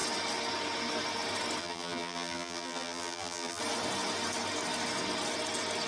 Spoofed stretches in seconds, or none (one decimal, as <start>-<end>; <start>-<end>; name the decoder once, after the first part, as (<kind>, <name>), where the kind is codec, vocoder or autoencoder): 1.6-3.6 (vocoder, BigVGAN v2)